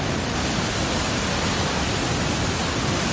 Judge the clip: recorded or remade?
recorded